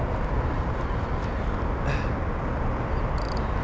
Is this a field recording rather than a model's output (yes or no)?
yes